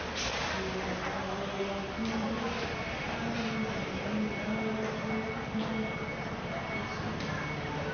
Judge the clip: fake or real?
real